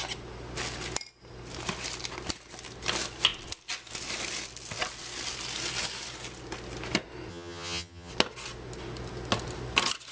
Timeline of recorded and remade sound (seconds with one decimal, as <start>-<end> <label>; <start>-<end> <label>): 0.0-7.3 recorded; 7.3-8.1 remade; 8.1-10.1 recorded

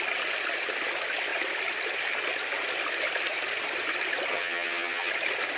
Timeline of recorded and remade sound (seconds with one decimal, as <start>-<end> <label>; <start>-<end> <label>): 0.0-4.3 recorded; 4.3-5.1 remade; 5.1-5.6 recorded

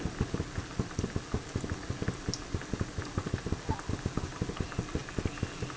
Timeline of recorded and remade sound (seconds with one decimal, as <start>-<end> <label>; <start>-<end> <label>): 0.0-5.8 recorded